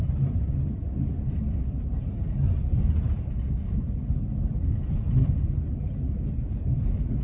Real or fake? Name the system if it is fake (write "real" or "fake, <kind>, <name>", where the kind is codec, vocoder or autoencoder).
real